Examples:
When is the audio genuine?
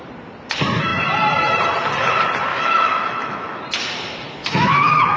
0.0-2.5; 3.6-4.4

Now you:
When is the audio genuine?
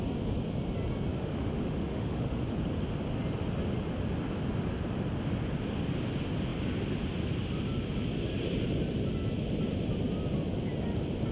0.0-1.1; 2.4-11.3